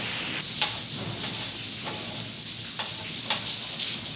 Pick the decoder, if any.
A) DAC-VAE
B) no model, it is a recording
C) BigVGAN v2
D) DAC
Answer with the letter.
B